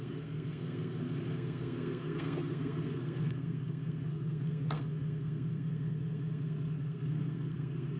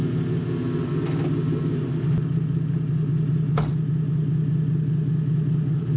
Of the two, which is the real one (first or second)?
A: second